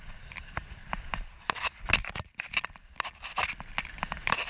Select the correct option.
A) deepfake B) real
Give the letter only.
B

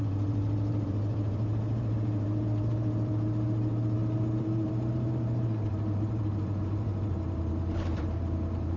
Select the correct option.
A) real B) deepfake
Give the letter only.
B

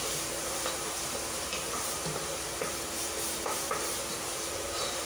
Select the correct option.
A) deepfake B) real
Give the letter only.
A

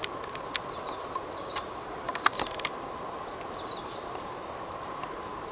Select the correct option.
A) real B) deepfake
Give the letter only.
A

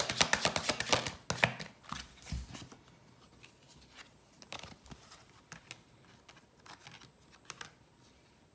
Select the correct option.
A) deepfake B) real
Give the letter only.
B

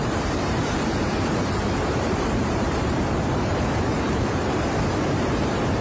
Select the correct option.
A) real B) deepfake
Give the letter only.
B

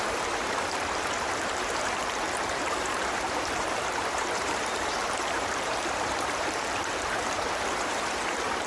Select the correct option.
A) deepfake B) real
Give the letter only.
A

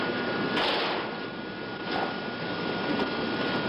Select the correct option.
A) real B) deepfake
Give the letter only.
A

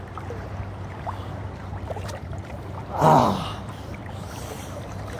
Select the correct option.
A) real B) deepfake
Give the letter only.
B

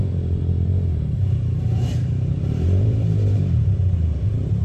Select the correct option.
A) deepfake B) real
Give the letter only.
A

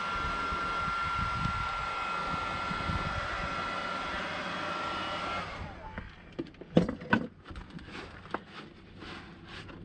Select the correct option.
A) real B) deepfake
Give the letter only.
A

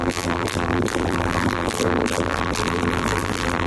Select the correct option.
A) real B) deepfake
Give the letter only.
B